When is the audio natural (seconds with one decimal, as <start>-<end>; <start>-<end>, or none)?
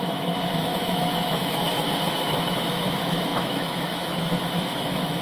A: 1.7-2.3